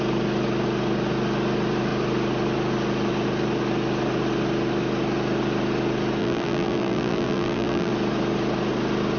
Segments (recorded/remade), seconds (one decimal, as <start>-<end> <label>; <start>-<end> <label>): 0.0-6.2 recorded; 6.2-7.9 remade; 7.9-9.2 recorded